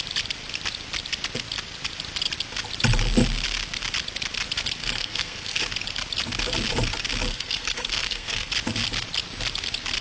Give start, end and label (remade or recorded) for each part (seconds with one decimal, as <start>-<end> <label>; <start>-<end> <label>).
0.0-4.8 recorded; 4.8-5.6 remade; 5.6-7.3 recorded; 7.3-8.5 remade; 8.5-10.0 recorded